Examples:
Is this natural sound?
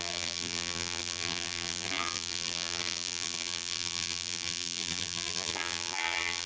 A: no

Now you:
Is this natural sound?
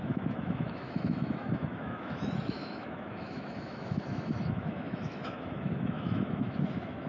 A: no